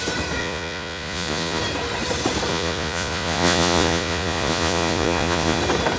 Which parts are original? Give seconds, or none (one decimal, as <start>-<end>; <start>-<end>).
0.0-0.4; 1.6-2.5; 5.6-6.0